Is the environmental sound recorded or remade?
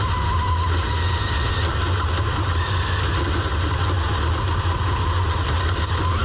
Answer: recorded